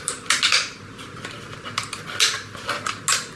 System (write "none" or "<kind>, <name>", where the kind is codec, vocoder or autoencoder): none